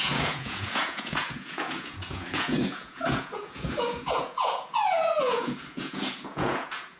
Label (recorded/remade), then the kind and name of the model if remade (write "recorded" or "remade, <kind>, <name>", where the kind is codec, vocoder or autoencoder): remade, vocoder, Vocos